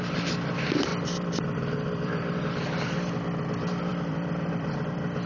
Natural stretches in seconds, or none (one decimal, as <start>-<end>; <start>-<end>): 0.0-0.9; 2.4-3.9